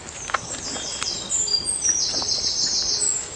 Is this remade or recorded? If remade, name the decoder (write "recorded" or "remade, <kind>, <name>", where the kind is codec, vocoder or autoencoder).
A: recorded